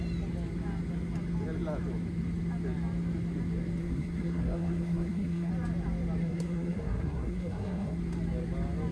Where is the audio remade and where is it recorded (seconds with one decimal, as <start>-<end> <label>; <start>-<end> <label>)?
0.0-3.8 recorded; 3.8-5.5 remade; 5.5-6.2 recorded; 6.2-8.0 remade; 8.0-8.9 recorded